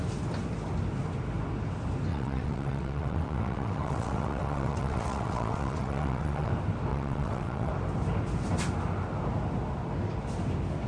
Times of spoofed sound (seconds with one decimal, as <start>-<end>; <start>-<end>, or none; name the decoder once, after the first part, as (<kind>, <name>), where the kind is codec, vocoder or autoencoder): 2.1-6.5 (vocoder, WaveNeXt); 6.9-7.7